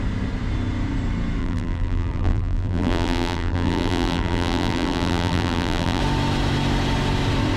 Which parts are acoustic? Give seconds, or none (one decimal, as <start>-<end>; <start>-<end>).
0.0-1.4; 6.0-7.6